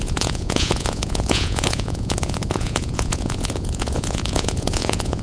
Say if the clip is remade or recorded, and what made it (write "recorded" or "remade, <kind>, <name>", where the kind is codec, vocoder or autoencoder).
remade, vocoder, Vocos